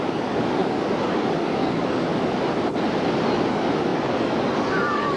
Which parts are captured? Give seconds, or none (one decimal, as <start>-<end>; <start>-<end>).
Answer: 2.1-3.5